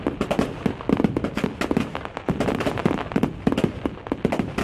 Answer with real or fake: real